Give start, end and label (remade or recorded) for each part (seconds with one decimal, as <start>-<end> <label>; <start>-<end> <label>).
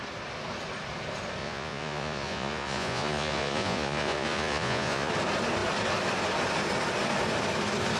0.0-1.4 recorded; 1.4-5.1 remade; 5.1-8.0 recorded